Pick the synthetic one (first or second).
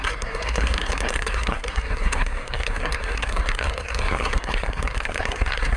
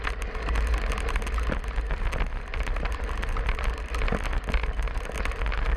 first